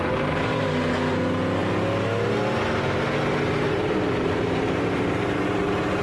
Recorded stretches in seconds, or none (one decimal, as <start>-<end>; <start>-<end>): 0.0-4.2; 5.6-6.0